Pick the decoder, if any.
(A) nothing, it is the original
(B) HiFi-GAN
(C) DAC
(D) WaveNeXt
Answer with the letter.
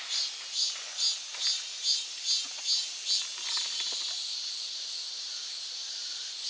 A